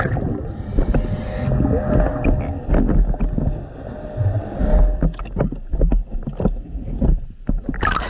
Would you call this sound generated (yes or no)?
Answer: no